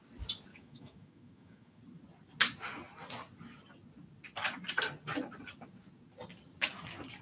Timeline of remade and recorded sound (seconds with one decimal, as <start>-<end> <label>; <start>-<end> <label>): 0.0-0.5 recorded; 0.5-1.8 remade; 1.8-7.2 recorded